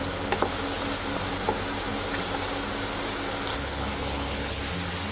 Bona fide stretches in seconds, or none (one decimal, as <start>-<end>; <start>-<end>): 0.0-3.5; 4.6-5.1